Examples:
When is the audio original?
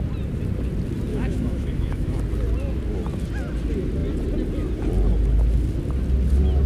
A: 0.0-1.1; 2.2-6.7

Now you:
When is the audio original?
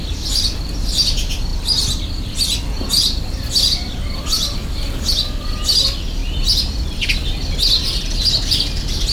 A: 0.0-9.1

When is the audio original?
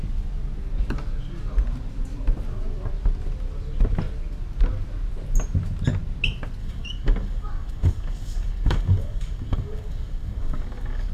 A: 0.0-6.6